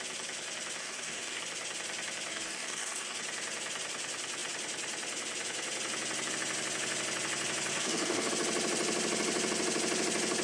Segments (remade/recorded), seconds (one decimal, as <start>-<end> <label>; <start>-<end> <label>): 0.0-0.8 recorded; 0.8-1.4 remade; 1.4-2.3 recorded; 2.3-3.2 remade; 3.2-7.7 recorded; 7.7-8.3 remade; 8.3-10.4 recorded